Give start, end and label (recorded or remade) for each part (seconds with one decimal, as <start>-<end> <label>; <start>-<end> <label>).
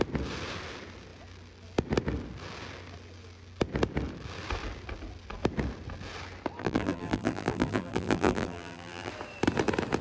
0.0-6.6 recorded; 6.6-9.1 remade; 9.1-10.0 recorded